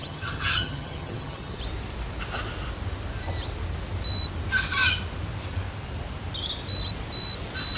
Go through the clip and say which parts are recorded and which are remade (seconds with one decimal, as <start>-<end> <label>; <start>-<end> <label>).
0.0-1.6 remade; 1.6-7.8 recorded